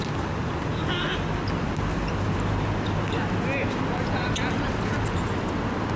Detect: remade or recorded recorded